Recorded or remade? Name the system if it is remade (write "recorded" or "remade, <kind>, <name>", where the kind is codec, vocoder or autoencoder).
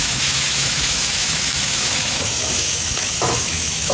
remade, autoencoder, DAC-VAE